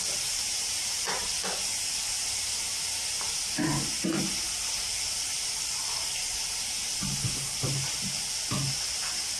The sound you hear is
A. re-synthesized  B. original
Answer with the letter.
B